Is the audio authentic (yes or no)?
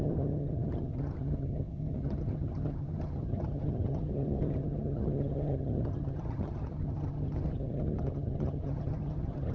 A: no